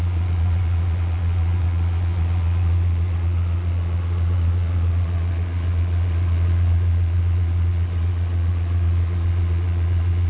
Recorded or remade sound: remade